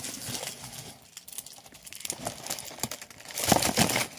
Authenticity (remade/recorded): recorded